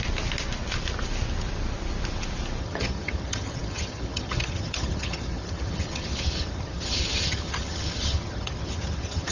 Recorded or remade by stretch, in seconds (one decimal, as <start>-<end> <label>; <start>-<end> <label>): 0.0-2.6 recorded; 2.6-9.3 remade